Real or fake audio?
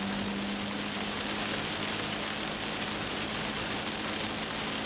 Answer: real